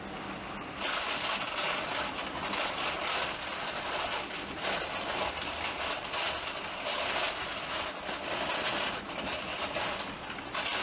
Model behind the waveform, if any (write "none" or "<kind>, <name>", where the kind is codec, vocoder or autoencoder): none